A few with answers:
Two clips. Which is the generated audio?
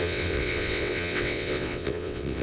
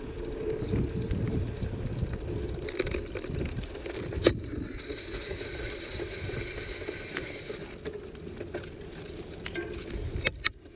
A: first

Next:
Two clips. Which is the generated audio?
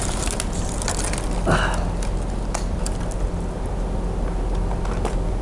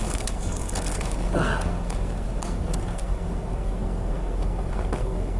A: second